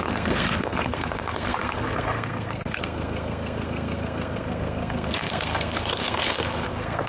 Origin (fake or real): fake